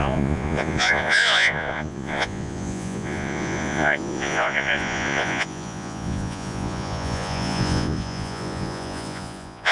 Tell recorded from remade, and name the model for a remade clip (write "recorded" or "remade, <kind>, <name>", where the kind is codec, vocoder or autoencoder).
remade, vocoder, Vocos